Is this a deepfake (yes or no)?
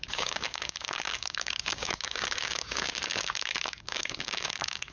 yes